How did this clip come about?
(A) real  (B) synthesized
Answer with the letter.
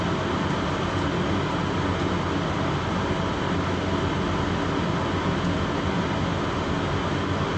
A